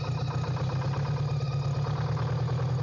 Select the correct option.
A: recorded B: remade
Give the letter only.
A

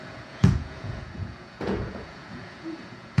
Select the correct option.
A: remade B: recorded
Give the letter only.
A